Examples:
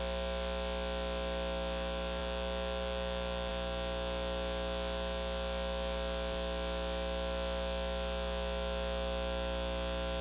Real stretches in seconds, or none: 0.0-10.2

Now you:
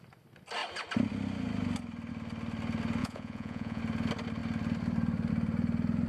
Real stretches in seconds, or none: 0.0-3.0; 3.8-6.1

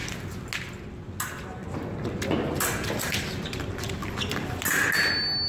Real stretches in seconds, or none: 0.0-5.5

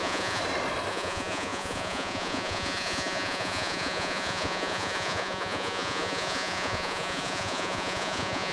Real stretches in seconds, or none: 0.4-0.9

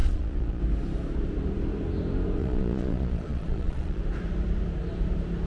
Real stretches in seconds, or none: 0.6-2.4; 4.0-5.5